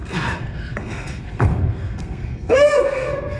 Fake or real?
fake